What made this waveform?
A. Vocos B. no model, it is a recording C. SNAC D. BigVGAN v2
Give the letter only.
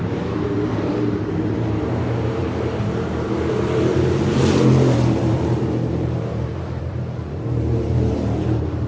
D